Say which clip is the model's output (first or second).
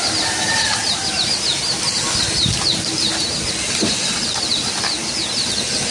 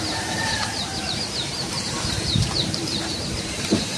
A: second